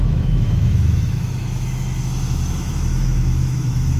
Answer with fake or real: fake